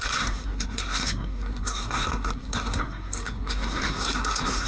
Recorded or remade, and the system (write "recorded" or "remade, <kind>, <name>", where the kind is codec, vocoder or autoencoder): remade, codec, SNAC